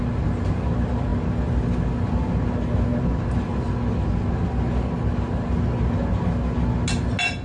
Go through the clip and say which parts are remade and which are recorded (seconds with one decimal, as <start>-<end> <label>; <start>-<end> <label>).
0.0-7.4 recorded